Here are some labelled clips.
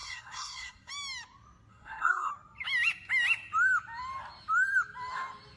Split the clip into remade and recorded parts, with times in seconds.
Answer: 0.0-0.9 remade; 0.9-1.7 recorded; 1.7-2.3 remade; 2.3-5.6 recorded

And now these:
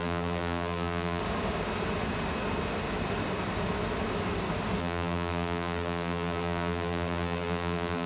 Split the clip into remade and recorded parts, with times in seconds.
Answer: 0.0-1.2 remade; 1.2-4.8 recorded; 4.8-8.1 remade

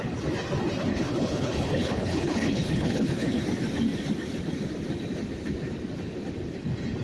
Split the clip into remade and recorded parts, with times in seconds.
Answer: 0.0-0.9 recorded; 0.9-3.4 remade; 3.4-7.0 recorded

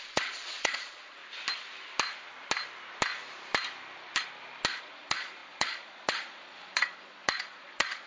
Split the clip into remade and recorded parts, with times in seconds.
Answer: 0.0-1.2 remade; 1.2-4.8 recorded; 4.8-8.1 remade

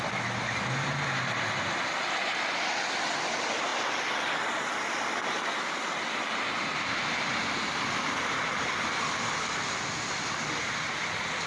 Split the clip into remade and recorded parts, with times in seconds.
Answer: 0.0-11.5 recorded